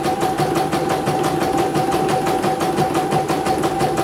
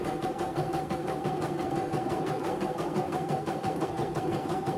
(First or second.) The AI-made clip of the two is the second